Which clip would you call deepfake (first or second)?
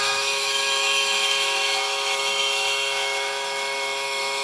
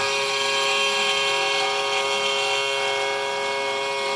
first